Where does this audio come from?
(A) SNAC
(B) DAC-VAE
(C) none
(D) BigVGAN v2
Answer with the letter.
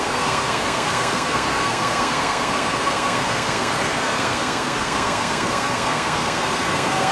A